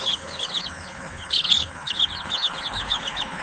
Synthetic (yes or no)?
yes